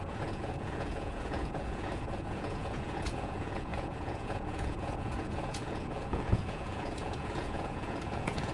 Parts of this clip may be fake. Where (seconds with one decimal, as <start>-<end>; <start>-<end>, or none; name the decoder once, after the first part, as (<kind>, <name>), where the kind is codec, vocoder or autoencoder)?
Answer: 0.0-8.5 (vocoder, Vocos)